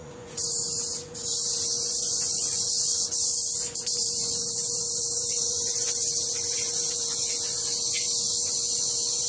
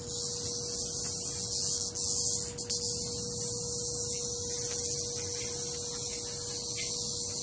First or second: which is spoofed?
first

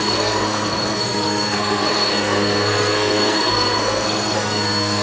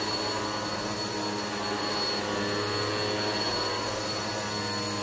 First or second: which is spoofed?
first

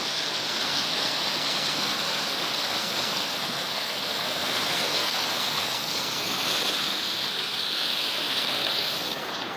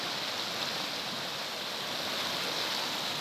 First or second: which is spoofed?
first